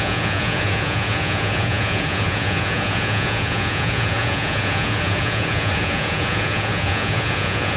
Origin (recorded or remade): remade